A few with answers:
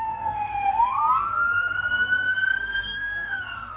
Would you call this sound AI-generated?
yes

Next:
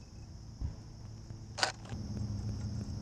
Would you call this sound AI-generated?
no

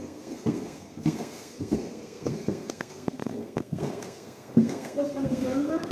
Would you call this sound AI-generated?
yes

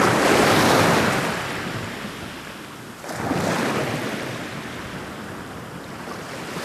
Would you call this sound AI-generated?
no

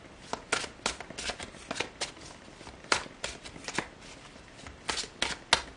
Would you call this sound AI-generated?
no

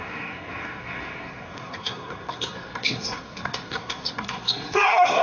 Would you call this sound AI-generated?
yes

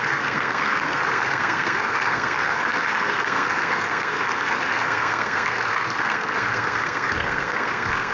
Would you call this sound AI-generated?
yes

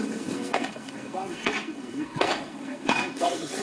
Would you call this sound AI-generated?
yes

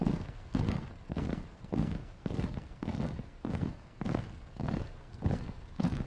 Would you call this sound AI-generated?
yes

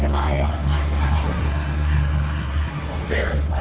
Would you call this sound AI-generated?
yes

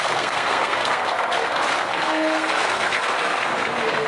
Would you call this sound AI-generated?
yes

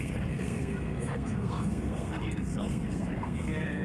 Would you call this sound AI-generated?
yes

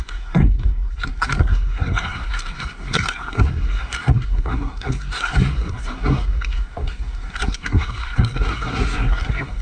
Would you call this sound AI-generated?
yes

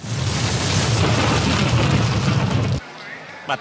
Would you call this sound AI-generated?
no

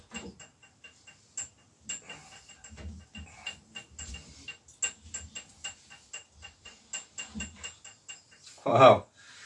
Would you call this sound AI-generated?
no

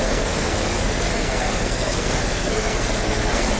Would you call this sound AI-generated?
yes